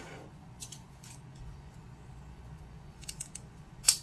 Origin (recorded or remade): remade